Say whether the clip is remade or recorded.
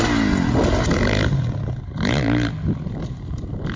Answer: recorded